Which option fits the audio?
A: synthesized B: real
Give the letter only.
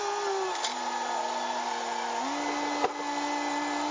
B